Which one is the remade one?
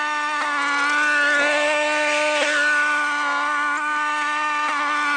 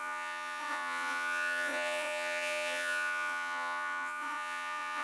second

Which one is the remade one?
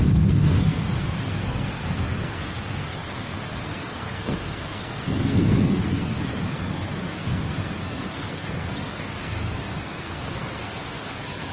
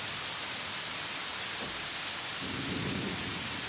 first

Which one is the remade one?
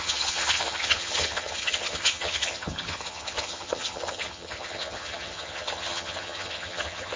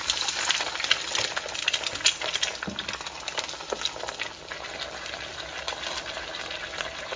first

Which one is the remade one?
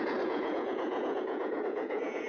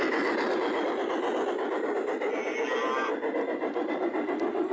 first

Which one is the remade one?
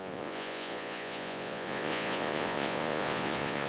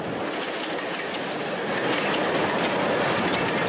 first